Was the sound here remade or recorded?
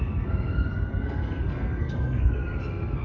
remade